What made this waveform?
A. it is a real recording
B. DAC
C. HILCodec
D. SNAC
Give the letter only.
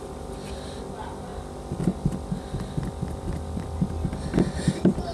A